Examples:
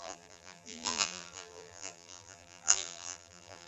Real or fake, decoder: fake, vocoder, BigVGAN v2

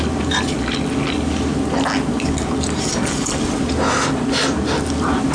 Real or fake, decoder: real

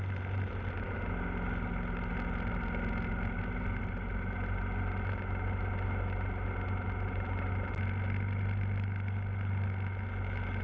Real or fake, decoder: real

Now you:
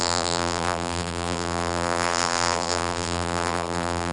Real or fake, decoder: fake, vocoder, BigVGAN v2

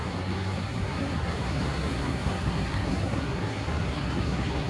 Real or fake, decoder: fake, codec, SNAC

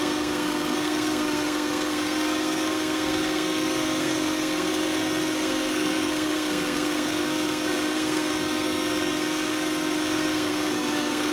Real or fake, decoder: fake, codec, SNAC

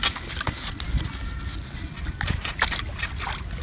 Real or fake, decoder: real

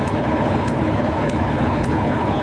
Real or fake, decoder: fake, codec, HILCodec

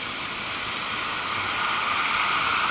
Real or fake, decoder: real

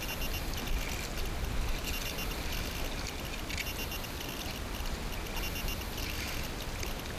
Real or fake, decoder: real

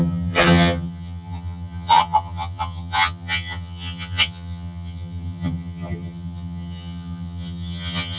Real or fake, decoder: fake, vocoder, HiFi-GAN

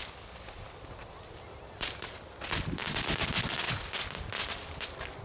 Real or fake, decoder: fake, vocoder, BigVGAN v2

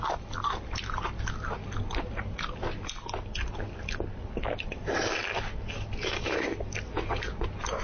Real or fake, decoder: real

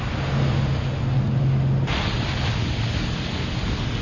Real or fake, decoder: real